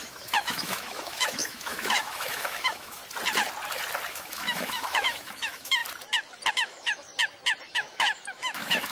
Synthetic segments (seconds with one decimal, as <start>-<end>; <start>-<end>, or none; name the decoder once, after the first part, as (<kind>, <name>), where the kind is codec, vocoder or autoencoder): 0.0-3.0 (autoencoder, DAC-VAE); 4.1-5.8; 6.5-7.1; 7.7-8.9